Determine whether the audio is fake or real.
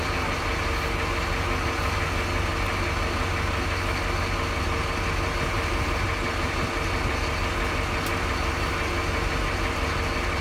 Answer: real